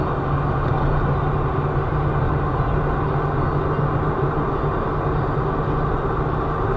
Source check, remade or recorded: recorded